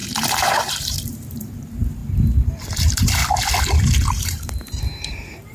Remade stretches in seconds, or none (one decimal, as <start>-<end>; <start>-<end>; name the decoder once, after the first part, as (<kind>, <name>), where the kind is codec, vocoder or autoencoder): 0.0-2.0 (vocoder, BigVGAN v2); 2.7-3.2; 4.1-5.5